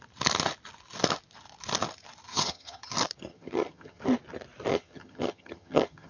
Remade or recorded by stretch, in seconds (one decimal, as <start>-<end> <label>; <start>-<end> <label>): 0.0-2.3 recorded; 2.3-2.9 remade; 2.9-3.3 recorded; 3.3-4.0 remade; 4.0-4.7 recorded; 4.7-6.1 remade